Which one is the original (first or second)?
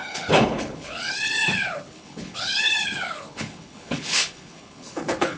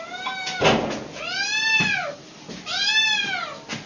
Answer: second